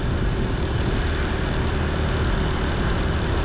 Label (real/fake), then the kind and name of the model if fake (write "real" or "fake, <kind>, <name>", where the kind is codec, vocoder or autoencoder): real